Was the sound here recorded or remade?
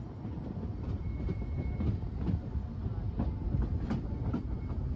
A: recorded